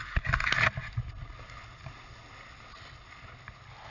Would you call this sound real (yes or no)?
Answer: yes